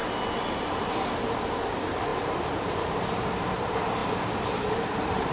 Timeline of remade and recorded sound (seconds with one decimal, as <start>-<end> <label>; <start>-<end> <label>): 0.0-0.6 recorded; 0.6-4.0 remade; 4.0-4.7 recorded; 4.7-5.3 remade